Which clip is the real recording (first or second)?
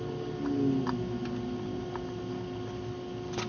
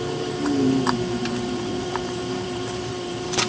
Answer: first